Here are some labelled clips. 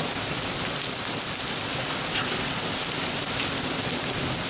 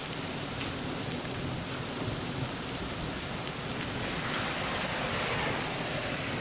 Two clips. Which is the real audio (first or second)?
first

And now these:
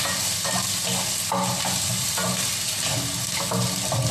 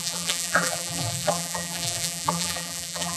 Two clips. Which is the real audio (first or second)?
first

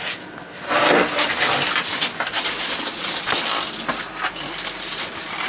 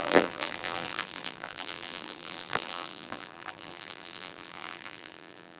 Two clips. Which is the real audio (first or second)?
first